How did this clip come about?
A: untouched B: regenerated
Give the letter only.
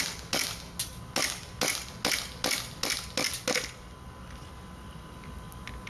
A